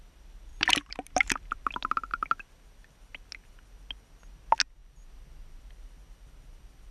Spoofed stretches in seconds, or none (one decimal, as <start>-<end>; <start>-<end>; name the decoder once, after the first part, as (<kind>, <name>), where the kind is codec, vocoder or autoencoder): 0.5-1.5 (vocoder, BigVGAN v2)